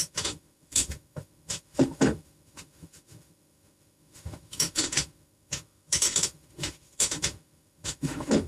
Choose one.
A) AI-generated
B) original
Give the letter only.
A